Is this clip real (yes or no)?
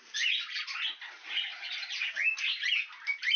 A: yes